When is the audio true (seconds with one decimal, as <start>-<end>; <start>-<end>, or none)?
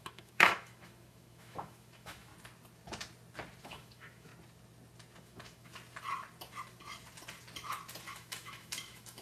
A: 2.3-3.6; 4.3-5.2; 5.7-8.1